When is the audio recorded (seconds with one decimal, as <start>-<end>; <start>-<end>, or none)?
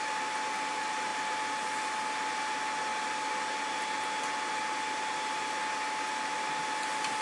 0.0-7.2